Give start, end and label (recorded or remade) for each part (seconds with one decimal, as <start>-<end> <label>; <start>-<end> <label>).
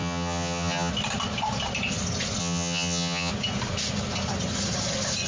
0.0-0.9 remade; 0.9-2.4 recorded; 2.4-3.3 remade; 3.3-5.3 recorded